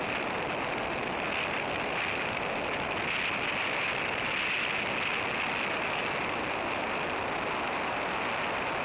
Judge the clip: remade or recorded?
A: recorded